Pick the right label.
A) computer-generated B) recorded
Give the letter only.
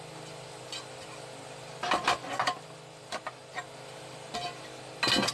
B